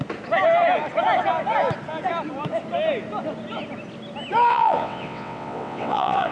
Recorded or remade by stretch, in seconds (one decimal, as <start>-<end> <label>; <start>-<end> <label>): 0.0-4.5 recorded; 4.5-6.3 remade